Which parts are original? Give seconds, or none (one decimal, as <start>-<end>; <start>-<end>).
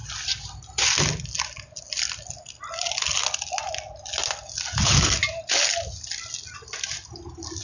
0.0-7.6